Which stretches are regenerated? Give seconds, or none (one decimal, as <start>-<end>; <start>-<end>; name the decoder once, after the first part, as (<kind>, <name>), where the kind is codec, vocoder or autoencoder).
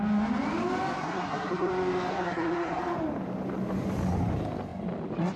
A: 1.0-1.7 (codec, SNAC); 2.1-2.8